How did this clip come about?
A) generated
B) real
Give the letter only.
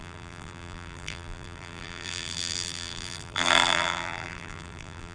A